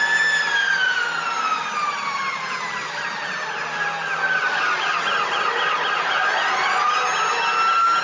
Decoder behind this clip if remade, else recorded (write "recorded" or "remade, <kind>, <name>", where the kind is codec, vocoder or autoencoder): recorded